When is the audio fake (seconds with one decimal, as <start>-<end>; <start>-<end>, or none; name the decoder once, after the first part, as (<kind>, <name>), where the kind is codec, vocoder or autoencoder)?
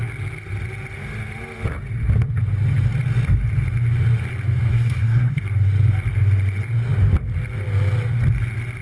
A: 4.7-5.4 (codec, SNAC)